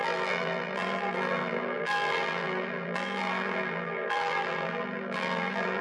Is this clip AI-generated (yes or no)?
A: yes